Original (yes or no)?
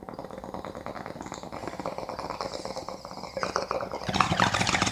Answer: yes